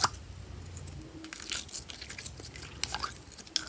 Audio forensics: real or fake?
real